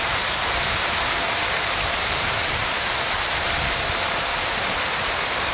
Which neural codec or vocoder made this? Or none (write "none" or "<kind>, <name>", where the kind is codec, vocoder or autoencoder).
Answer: vocoder, BigVGAN v2